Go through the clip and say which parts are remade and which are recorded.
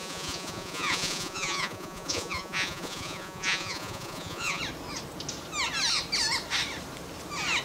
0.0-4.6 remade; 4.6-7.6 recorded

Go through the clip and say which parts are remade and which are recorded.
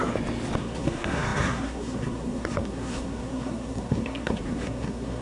0.0-0.6 recorded; 0.6-5.2 remade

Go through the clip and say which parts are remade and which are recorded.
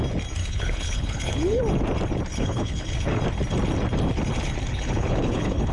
0.0-0.4 recorded; 0.4-1.6 remade; 1.6-2.3 recorded; 2.3-3.2 remade; 3.2-4.7 recorded; 4.7-5.7 remade